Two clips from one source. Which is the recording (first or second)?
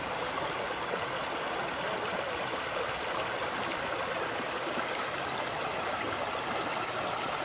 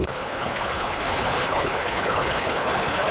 first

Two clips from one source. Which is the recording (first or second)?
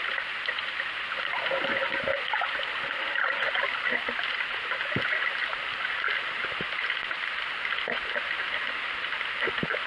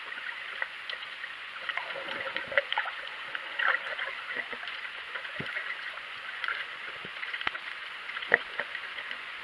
first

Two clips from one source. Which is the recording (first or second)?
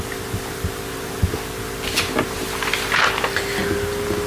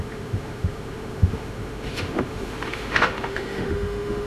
first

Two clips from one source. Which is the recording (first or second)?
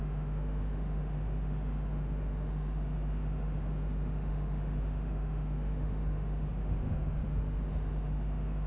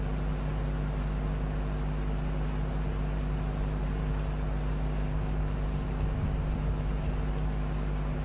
second